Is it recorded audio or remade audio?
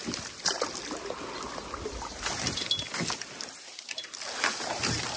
recorded